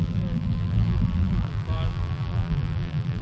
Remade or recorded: remade